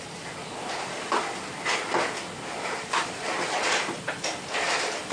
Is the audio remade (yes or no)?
no